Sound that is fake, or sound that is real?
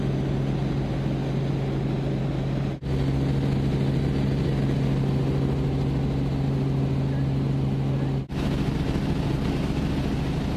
real